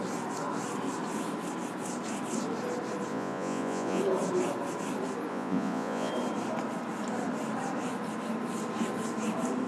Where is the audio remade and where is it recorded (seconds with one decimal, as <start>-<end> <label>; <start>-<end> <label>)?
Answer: 0.0-3.1 recorded; 3.1-4.0 remade; 4.0-5.3 recorded; 5.3-6.1 remade; 6.1-9.7 recorded